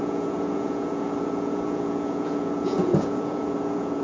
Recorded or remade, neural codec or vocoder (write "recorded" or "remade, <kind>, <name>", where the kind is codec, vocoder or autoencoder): remade, vocoder, Vocos